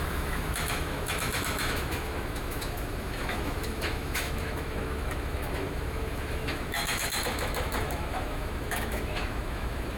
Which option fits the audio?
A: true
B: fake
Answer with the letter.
B